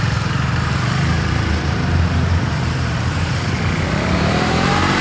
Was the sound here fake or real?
fake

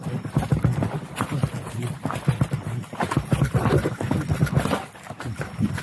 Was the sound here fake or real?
real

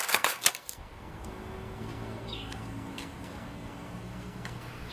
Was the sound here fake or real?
fake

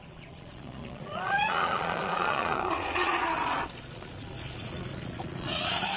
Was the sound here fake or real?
fake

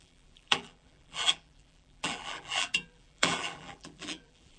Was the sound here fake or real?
fake